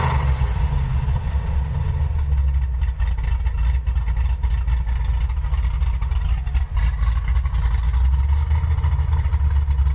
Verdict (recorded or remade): recorded